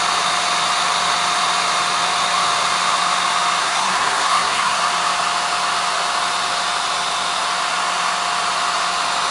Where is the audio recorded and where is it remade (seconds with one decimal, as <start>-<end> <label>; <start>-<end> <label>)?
0.0-3.6 recorded; 3.6-4.8 remade; 4.8-9.3 recorded